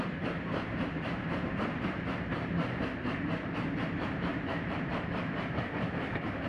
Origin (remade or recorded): remade